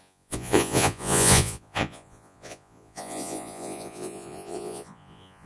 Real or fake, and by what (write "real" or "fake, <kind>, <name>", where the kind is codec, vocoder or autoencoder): fake, vocoder, Vocos